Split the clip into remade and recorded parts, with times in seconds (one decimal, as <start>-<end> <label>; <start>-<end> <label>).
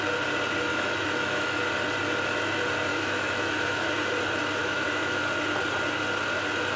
0.0-0.7 recorded; 0.7-1.6 remade; 1.6-2.9 recorded; 2.9-3.9 remade; 3.9-4.6 recorded; 4.6-5.2 remade; 5.2-6.8 recorded